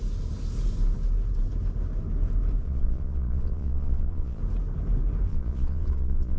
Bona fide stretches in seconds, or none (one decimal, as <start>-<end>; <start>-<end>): 0.0-2.6; 4.4-5.3